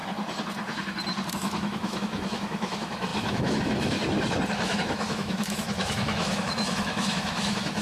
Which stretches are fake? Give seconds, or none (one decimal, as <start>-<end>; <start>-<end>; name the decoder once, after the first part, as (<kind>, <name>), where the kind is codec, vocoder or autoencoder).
1.3-4.0 (autoencoder, DAC-VAE); 4.5-7.8